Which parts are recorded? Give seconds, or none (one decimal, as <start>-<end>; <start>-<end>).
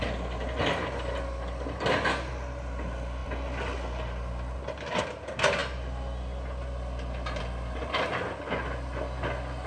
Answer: 0.0-9.7